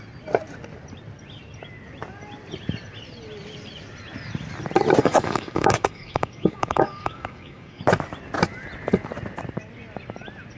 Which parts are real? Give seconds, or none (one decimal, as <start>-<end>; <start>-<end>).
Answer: 0.0-5.0; 7.8-10.6